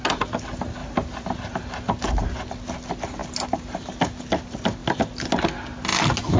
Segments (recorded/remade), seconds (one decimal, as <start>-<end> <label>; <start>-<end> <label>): 0.0-0.8 recorded; 0.8-1.3 remade; 1.3-6.4 recorded